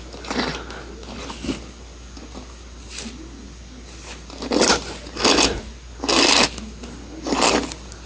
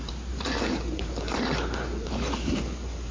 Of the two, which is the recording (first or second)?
first